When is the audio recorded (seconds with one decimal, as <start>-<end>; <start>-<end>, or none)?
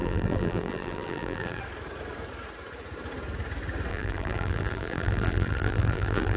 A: 1.6-3.9